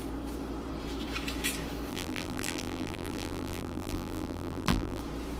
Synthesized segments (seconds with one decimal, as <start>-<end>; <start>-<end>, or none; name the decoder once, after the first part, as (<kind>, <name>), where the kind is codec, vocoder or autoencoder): 1.9-5.0 (vocoder, BigVGAN v2)